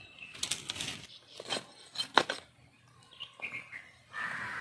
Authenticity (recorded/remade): recorded